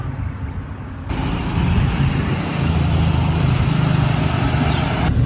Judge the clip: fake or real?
real